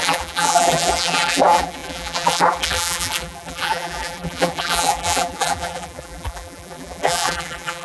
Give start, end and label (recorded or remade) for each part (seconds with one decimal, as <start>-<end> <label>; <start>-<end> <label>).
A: 0.0-7.8 remade